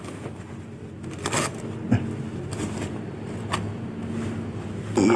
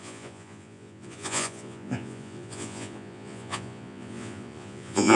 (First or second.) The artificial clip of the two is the second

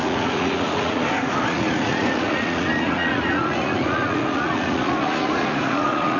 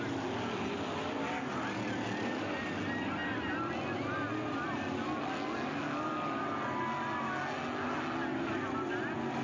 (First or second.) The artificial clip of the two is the first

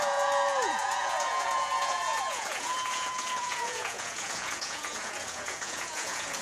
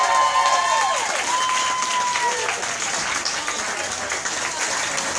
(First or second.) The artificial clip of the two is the first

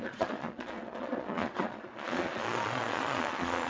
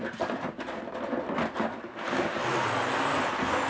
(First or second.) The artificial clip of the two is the first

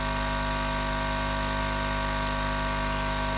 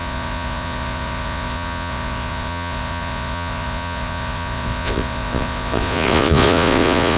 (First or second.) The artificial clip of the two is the second